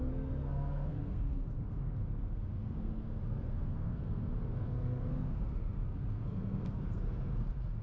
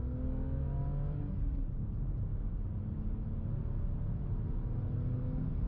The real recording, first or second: second